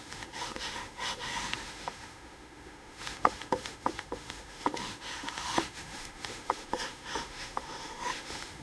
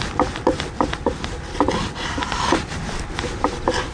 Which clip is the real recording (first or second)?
second